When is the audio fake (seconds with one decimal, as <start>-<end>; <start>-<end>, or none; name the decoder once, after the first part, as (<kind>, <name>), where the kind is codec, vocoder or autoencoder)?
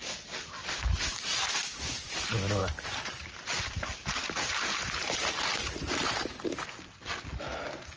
0.6-1.5 (vocoder, BigVGAN v2); 2.6-6.6